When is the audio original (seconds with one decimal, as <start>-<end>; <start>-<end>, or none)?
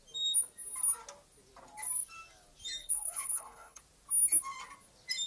0.0-2.8; 3.8-5.3